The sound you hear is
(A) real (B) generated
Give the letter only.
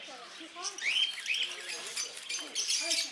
A